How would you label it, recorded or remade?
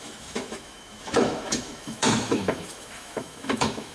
remade